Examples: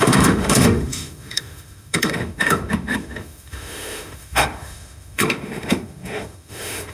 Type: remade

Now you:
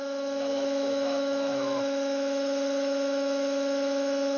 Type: remade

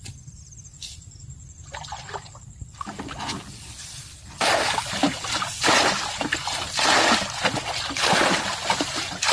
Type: recorded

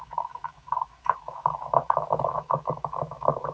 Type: remade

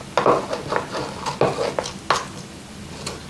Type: recorded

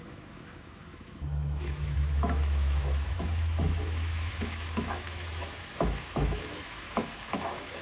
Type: remade